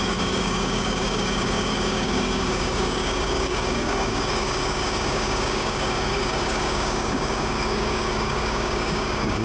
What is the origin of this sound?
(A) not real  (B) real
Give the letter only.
A